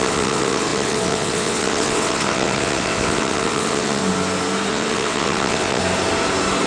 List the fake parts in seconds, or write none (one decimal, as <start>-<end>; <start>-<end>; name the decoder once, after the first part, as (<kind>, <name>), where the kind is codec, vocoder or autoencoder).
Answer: 0.0-4.0 (vocoder, WaveNeXt); 4.7-5.8